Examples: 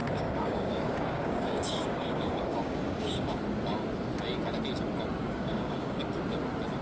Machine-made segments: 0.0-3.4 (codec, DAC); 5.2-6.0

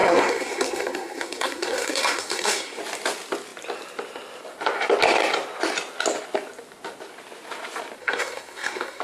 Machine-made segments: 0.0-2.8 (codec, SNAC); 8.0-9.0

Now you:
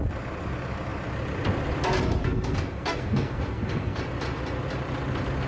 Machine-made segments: 2.2-4.0 (codec, SNAC)